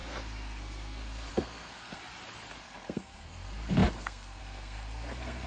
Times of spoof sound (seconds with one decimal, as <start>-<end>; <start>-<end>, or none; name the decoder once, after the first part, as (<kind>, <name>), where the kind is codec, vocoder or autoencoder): 0.0-2.0 (codec, SNAC); 2.6-5.5